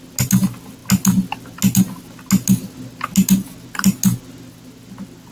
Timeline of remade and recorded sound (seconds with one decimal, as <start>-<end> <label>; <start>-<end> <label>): 0.0-5.3 recorded